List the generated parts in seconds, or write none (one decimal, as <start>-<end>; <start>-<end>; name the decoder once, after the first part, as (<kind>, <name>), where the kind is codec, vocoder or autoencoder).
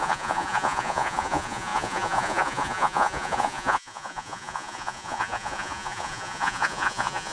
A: 0.0-7.3 (vocoder, Vocos)